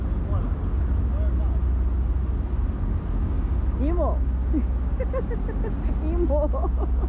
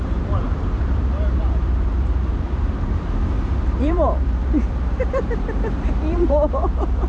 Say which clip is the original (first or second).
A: first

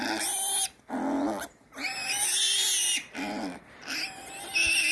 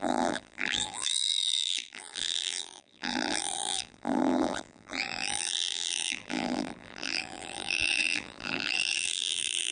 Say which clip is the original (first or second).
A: first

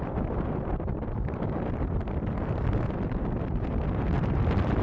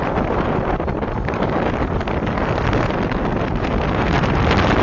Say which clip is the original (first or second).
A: second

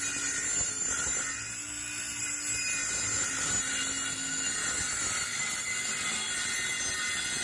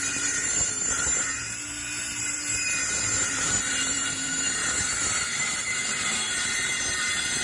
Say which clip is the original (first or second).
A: first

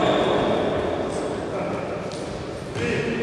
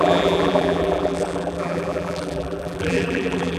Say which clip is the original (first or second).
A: first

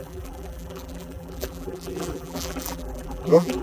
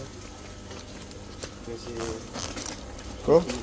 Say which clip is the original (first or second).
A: second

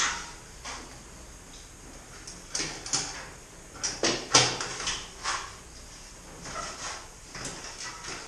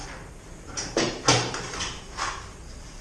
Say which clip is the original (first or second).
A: first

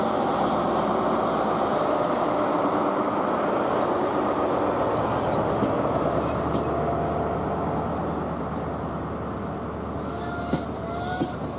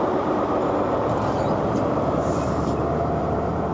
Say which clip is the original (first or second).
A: first